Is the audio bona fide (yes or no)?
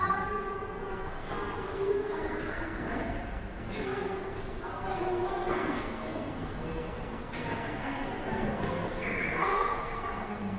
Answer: no